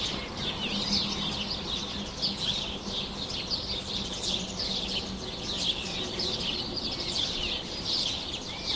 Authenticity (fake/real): real